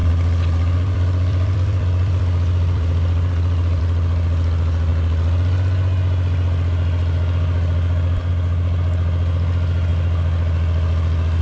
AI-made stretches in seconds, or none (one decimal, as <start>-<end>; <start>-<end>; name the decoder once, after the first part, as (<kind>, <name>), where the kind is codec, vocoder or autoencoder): 0.0-3.8 (vocoder, BigVGAN v2)